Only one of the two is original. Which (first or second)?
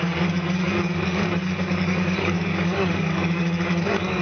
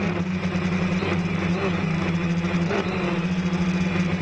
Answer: second